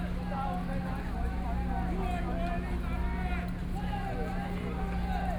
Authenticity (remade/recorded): recorded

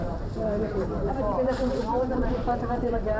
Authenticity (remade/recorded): remade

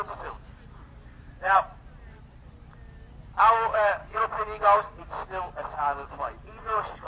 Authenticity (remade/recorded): recorded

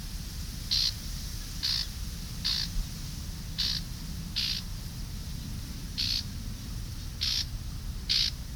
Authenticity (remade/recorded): recorded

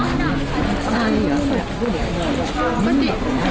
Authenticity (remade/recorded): recorded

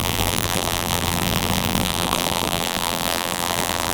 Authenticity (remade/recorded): remade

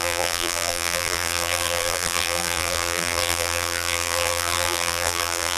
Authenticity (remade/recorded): remade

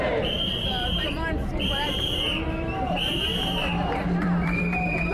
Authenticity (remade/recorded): remade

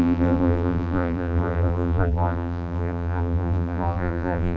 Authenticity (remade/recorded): remade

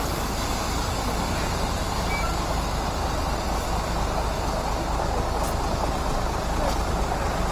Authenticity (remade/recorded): recorded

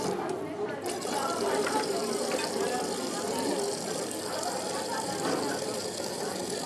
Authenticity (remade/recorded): recorded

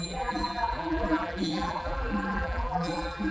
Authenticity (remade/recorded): remade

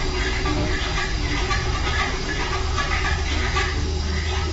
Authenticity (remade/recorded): recorded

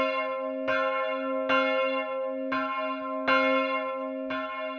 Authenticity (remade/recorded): recorded